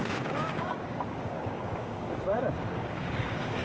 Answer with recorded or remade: remade